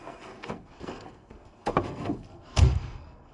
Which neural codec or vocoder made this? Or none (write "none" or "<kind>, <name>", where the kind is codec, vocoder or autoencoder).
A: codec, SNAC